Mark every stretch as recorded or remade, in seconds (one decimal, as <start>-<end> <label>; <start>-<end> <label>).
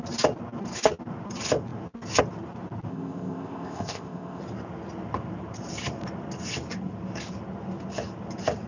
0.0-2.9 recorded; 2.9-4.4 remade; 4.4-8.7 recorded